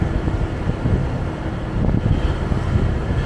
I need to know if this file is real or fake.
real